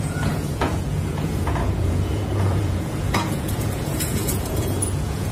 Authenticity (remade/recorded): remade